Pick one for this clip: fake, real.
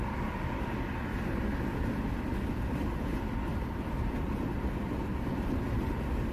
real